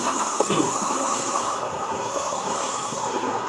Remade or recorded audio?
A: remade